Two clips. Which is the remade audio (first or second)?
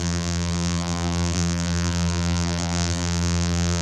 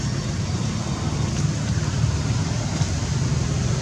first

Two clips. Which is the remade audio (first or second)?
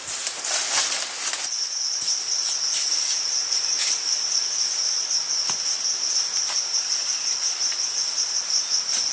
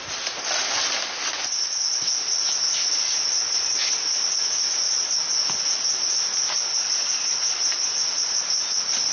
first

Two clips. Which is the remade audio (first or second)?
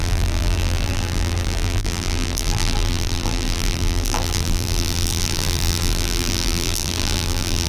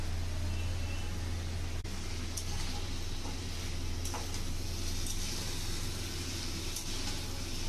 first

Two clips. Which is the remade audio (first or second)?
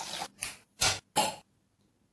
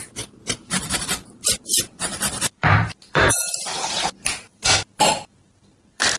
second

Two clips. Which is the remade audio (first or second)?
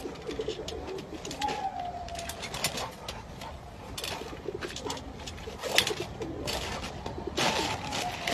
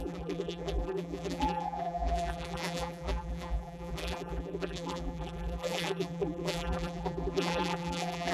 second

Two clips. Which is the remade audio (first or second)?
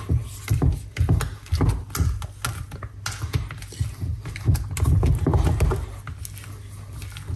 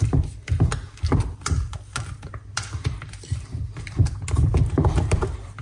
second